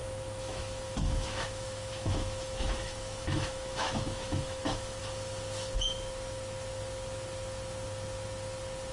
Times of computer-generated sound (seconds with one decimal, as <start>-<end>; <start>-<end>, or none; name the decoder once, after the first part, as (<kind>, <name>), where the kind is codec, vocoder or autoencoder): 0.0-5.0 (autoencoder, DAC-VAE)